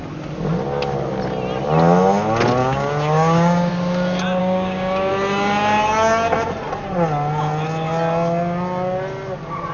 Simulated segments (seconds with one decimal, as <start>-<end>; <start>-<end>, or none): 2.6-3.7; 4.4-5.1